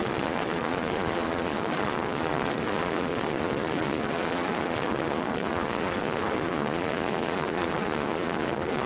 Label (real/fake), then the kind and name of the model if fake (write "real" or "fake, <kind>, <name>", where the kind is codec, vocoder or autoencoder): fake, vocoder, Vocos